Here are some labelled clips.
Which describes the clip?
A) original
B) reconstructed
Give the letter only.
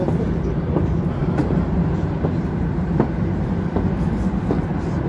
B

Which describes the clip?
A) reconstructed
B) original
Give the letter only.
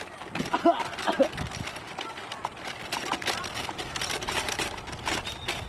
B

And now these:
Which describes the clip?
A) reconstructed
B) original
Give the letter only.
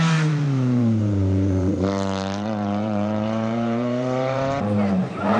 A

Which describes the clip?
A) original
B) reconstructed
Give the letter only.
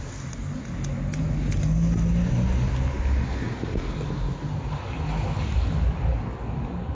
A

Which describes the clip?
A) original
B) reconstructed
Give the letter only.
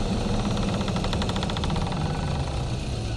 A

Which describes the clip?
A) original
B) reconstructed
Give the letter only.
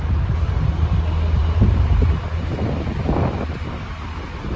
A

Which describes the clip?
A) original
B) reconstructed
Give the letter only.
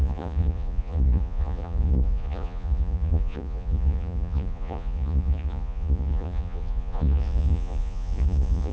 B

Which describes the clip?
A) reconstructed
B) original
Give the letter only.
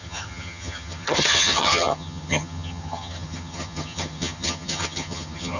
A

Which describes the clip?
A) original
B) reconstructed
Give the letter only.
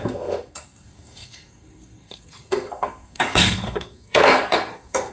B